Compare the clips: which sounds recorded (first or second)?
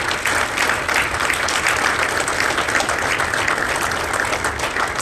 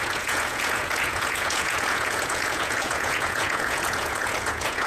first